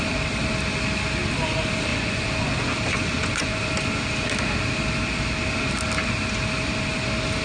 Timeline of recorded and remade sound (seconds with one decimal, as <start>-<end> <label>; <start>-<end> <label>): 0.0-1.9 recorded; 1.9-2.5 remade; 2.5-2.9 recorded; 2.9-3.7 remade; 3.7-7.4 recorded